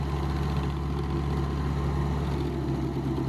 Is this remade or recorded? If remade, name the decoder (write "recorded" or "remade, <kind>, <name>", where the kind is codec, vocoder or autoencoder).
recorded